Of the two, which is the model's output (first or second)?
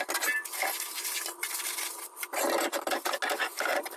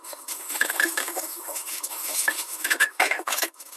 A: second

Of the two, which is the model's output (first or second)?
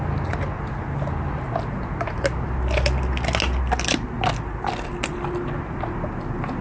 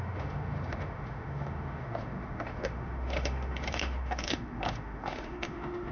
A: second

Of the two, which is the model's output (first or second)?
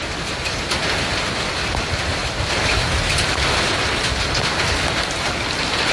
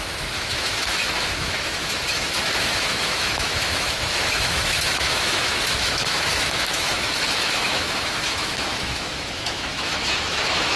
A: second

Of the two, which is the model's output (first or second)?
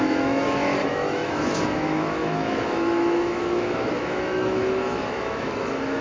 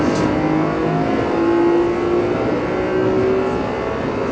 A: first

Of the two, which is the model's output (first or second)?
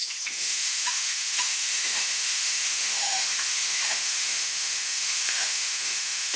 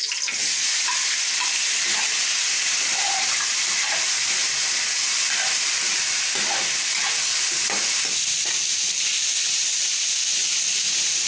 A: first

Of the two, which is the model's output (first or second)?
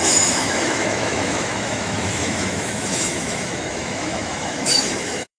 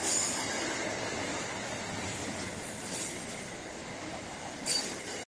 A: first